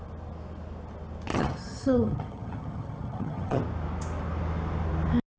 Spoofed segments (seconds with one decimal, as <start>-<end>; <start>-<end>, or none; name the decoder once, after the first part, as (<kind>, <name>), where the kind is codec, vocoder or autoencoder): 1.3-3.6 (vocoder, HiFi-GAN)